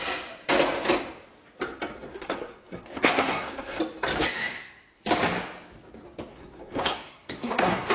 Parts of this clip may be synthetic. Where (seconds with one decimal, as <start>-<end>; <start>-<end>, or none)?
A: 2.1-3.8; 4.3-5.0; 6.3-7.9